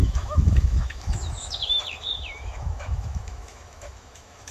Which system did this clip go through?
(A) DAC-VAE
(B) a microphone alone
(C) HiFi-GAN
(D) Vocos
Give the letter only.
A